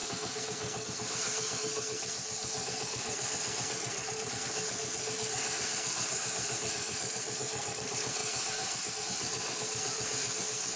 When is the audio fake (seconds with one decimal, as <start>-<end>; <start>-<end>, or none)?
0.0-10.8